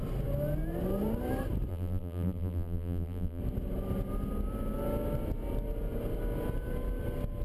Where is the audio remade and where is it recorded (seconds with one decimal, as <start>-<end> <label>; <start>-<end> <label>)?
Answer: 0.0-1.7 recorded; 1.7-3.4 remade; 3.4-7.4 recorded